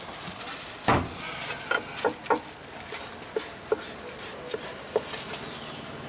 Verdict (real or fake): real